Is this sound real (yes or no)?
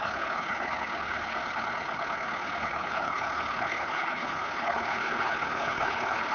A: no